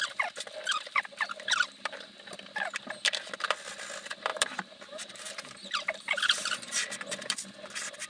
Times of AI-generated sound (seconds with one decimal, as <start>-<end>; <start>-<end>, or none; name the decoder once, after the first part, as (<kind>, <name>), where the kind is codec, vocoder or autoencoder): 4.3-6.9 (vocoder, BigVGAN v2)